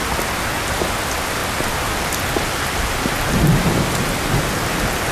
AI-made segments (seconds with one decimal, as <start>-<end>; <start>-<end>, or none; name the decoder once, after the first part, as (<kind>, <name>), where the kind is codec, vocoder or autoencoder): none